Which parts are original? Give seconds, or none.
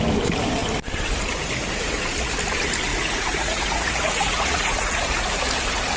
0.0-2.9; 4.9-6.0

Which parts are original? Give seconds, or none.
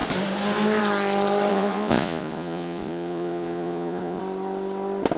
0.0-1.5; 4.2-5.2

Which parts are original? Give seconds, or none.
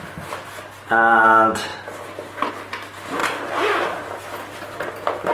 0.0-5.3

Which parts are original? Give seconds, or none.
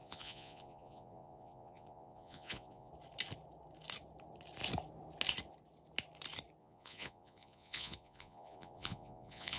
2.9-6.6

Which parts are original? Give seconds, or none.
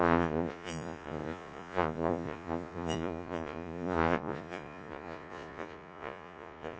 none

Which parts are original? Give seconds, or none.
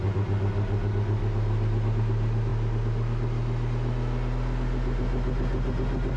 0.0-6.2